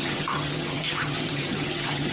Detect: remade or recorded remade